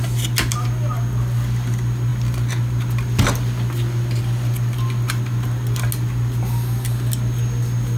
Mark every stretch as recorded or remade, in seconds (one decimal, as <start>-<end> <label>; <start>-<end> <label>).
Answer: 0.0-8.0 recorded